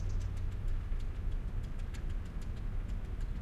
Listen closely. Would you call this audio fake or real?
real